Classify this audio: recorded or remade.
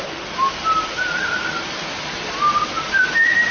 recorded